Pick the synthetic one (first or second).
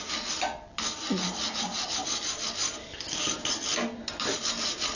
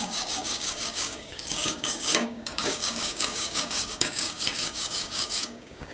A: second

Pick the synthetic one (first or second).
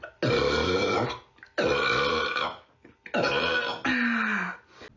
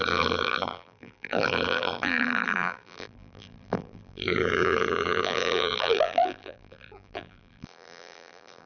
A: second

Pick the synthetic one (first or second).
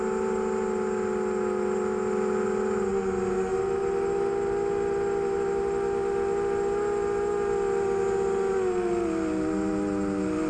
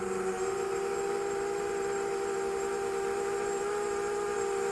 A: second